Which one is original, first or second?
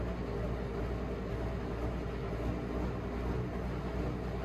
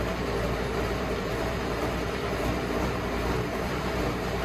first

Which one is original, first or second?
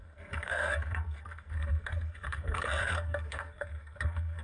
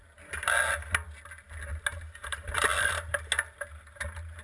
second